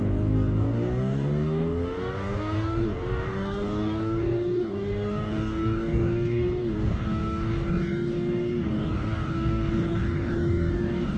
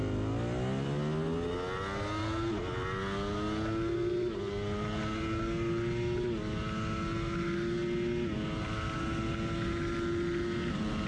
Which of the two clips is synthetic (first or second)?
first